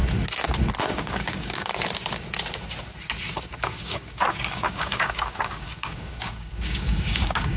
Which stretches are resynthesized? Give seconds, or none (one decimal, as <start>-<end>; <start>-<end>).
0.8-1.7; 3.6-7.6